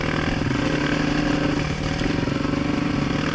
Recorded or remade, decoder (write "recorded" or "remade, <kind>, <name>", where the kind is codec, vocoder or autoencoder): recorded